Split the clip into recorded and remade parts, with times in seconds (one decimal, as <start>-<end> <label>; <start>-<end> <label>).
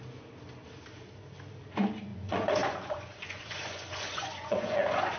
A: 0.0-2.1 recorded; 2.1-5.2 remade